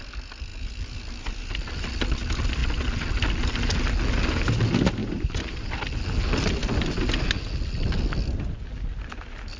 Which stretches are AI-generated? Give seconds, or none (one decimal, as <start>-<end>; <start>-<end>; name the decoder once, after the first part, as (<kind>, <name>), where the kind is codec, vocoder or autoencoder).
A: 5.0-5.7 (vocoder, BigVGAN v2)